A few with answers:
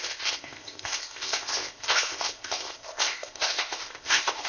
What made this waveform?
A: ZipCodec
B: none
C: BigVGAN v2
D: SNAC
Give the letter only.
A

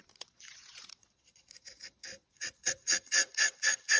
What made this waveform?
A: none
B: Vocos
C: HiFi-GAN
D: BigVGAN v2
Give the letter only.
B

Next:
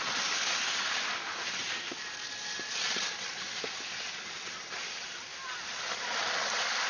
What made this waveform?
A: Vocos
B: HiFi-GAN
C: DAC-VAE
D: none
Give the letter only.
D